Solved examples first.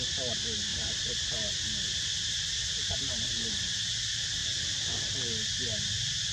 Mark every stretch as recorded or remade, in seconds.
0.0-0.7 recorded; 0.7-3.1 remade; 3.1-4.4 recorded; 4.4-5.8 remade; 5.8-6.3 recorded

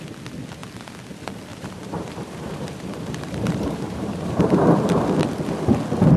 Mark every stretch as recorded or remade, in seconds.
0.0-1.5 recorded; 1.5-5.2 remade; 5.2-6.2 recorded